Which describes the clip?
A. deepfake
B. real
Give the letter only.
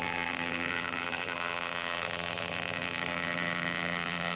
A